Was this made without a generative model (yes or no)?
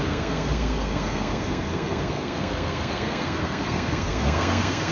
no